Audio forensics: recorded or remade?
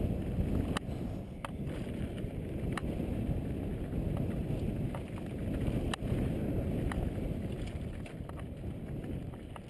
recorded